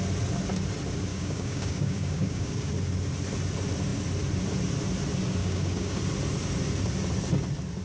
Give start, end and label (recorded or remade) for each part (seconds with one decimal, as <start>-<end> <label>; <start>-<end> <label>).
0.0-1.1 recorded; 1.1-2.7 remade; 2.7-5.4 recorded; 5.4-6.0 remade; 6.0-7.8 recorded